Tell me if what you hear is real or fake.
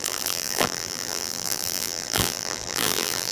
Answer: fake